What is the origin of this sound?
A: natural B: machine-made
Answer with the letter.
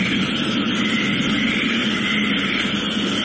A